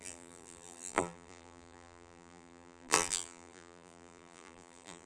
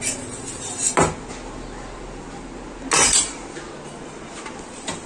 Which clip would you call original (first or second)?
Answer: second